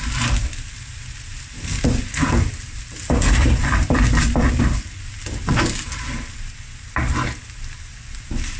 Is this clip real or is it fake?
real